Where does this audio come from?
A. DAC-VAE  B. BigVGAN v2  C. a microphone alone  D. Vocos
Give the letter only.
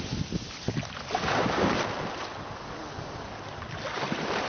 C